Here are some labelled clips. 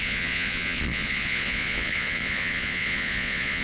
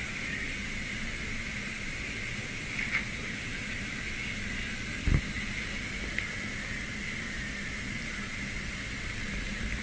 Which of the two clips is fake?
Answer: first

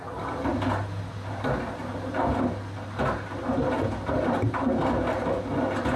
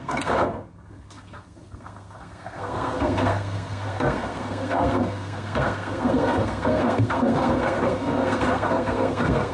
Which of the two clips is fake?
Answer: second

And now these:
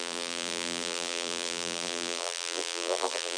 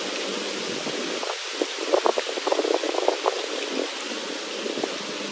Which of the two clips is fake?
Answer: first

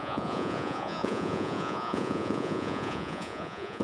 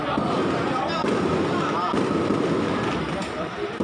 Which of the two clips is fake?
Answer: first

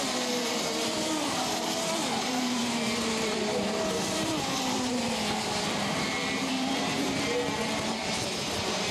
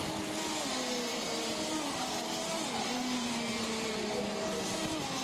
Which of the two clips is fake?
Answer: first